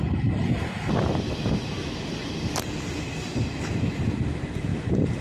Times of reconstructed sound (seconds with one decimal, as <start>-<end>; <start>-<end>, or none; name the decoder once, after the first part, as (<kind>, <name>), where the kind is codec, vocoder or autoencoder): 4.7-5.2 (vocoder, BigVGAN v2)